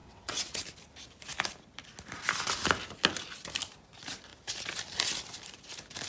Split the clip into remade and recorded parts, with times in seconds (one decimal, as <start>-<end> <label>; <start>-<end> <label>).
0.0-0.6 remade; 0.6-6.1 recorded